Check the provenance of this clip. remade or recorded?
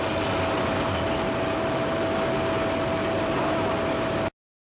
recorded